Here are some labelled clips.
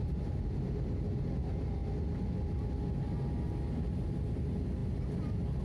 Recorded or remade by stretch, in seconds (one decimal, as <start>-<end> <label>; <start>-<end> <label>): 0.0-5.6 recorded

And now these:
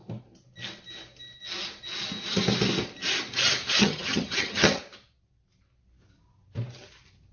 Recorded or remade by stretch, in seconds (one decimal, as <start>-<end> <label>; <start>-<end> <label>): 0.0-3.8 recorded; 3.8-4.8 remade; 4.8-7.3 recorded

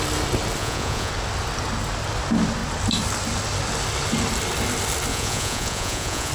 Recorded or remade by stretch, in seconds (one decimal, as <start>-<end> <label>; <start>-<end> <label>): 0.0-0.6 recorded; 0.6-1.1 remade; 1.1-5.1 recorded; 5.1-6.3 remade

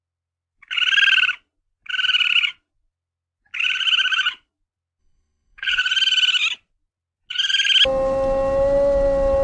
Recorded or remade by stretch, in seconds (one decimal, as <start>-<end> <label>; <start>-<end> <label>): 0.0-5.0 recorded; 5.0-5.8 remade; 5.8-9.4 recorded